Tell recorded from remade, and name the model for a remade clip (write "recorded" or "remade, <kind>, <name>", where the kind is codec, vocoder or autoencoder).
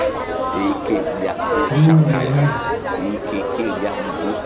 recorded